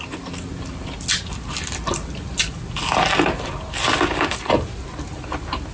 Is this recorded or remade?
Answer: recorded